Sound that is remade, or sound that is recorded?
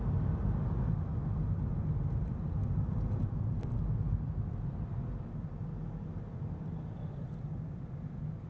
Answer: recorded